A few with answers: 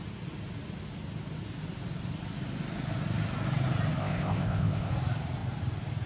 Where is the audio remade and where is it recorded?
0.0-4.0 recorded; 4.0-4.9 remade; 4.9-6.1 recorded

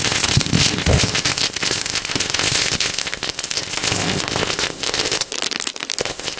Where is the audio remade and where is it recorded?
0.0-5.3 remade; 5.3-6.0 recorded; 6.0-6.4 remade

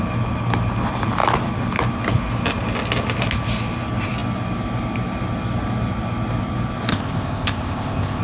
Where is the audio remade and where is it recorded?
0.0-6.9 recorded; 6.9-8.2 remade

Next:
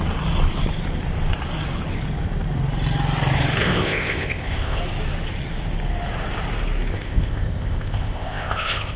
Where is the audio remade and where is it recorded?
0.0-3.6 recorded; 3.6-4.8 remade; 4.8-6.9 recorded; 6.9-9.0 remade

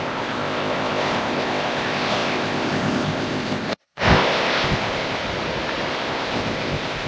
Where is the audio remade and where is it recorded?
0.0-5.2 remade; 5.2-5.9 recorded; 5.9-7.1 remade